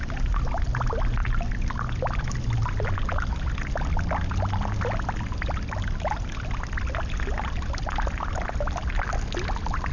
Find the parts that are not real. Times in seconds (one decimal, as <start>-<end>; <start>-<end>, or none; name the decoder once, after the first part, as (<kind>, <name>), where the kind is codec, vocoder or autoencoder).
none